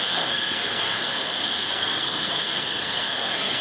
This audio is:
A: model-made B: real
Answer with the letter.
A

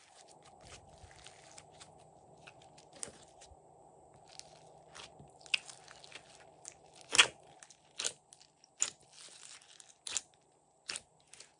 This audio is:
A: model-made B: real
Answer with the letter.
B